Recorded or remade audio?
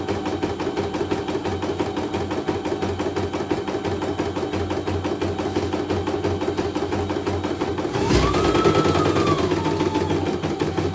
recorded